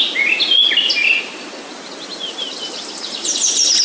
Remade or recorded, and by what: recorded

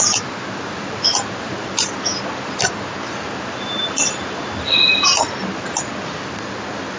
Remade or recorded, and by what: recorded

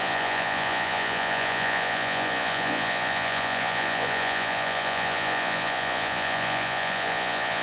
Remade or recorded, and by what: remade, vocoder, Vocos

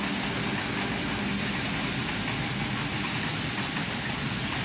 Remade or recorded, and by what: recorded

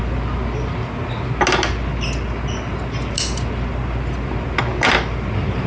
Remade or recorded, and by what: recorded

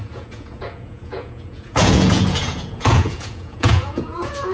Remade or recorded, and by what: remade, vocoder, Vocos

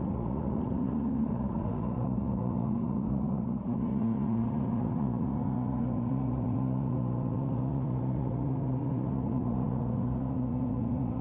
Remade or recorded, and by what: remade, vocoder, Vocos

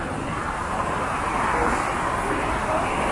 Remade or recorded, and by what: recorded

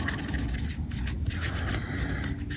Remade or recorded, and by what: recorded